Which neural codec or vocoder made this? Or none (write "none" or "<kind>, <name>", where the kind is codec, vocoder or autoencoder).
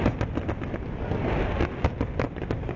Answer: none